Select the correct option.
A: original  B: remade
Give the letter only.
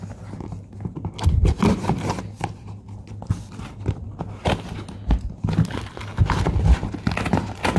A